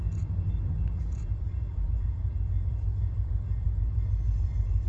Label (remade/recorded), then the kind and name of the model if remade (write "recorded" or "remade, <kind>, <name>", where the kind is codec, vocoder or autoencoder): remade, vocoder, BigVGAN v2